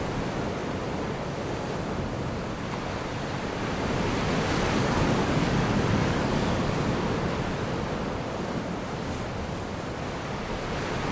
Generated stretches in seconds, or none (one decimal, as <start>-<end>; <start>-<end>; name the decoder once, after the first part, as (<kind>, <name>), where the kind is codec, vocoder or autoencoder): 4.8-6.6 (codec, DAC)